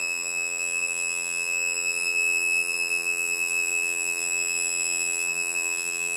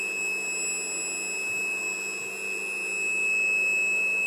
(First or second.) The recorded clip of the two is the second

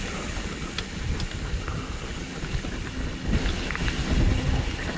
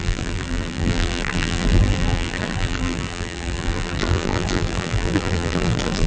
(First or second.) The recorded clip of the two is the first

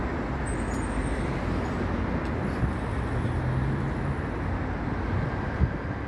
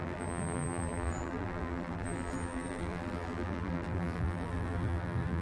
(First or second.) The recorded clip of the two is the first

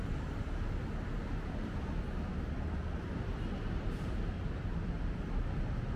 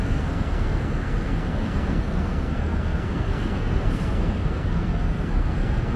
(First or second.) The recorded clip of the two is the first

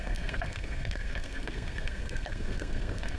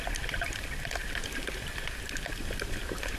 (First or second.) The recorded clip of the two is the second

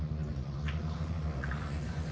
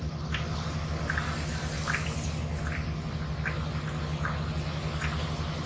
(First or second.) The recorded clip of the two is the second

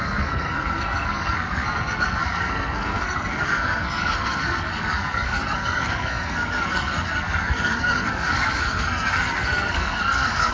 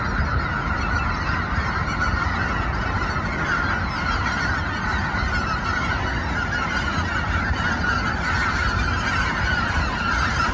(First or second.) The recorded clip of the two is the second